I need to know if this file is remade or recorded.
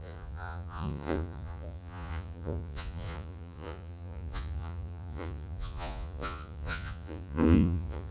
remade